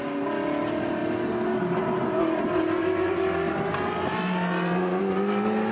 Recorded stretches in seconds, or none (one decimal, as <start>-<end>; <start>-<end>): 0.0-5.7